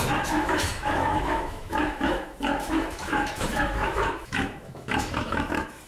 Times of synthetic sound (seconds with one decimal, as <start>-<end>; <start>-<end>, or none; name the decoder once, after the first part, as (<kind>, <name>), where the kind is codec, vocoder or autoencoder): 0.0-5.9 (autoencoder, DAC-VAE)